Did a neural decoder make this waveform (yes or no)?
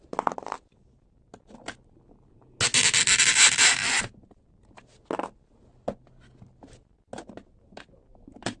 no